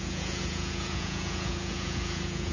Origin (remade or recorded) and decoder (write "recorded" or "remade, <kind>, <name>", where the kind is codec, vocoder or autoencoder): remade, vocoder, Vocos